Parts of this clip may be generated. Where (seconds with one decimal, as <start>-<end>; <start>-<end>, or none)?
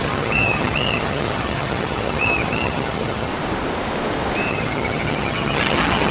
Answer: 0.0-3.3; 4.5-6.1